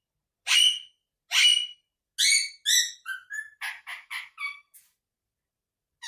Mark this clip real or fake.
real